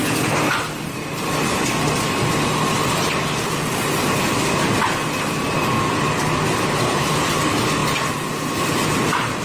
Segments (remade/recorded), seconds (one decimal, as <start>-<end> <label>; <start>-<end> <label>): 0.0-0.8 recorded; 0.8-7.8 remade; 7.8-8.4 recorded; 8.4-9.4 remade

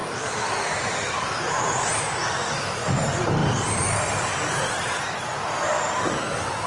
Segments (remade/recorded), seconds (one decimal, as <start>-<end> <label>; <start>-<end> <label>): 0.0-1.5 remade; 1.5-6.7 recorded

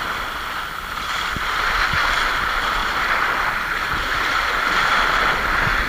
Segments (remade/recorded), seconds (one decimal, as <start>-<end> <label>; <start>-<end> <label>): 0.0-5.9 recorded

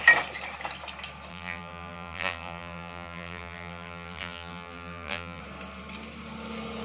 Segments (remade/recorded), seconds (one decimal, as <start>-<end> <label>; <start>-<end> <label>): 0.0-1.3 recorded; 1.3-5.4 remade; 5.4-6.8 recorded

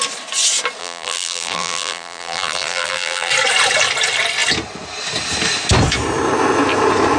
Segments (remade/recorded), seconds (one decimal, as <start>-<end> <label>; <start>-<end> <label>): 0.0-0.8 recorded; 0.8-3.3 remade; 3.3-7.2 recorded

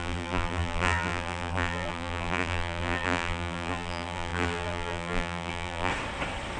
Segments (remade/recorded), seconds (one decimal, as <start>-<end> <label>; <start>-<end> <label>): 0.0-5.9 remade; 5.9-6.6 recorded

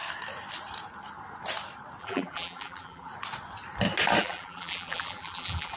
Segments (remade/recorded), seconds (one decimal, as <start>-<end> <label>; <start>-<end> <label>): 0.0-2.0 recorded; 2.0-3.1 remade; 3.1-4.2 recorded; 4.2-5.8 remade

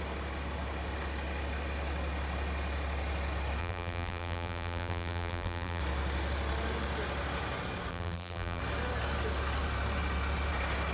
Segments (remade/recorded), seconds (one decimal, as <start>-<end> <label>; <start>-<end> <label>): 0.0-3.6 recorded; 3.6-5.8 remade; 5.8-7.9 recorded; 7.9-8.6 remade; 8.6-10.9 recorded